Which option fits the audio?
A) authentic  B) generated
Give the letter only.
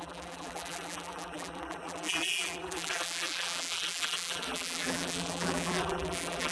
B